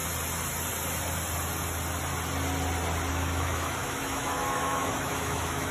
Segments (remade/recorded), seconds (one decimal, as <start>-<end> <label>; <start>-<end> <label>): 0.0-3.1 recorded; 3.1-5.7 remade